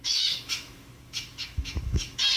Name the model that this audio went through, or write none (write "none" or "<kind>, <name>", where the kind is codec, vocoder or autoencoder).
autoencoder, DAC-VAE